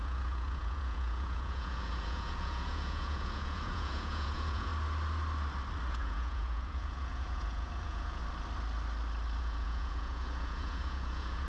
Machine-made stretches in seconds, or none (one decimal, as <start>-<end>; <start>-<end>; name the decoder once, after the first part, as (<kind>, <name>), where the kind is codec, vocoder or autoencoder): 0.0-4.7 (vocoder, Vocos); 5.9-8.2; 9.4-11.5